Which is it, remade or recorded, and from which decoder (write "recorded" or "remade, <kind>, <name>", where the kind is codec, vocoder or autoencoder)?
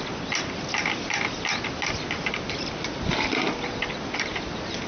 recorded